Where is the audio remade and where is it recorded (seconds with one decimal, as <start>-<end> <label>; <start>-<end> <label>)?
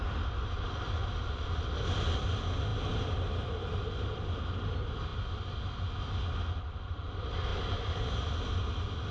0.0-9.1 recorded